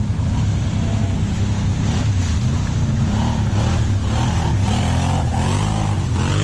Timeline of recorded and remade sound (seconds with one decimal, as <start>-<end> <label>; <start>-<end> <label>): 0.0-6.4 recorded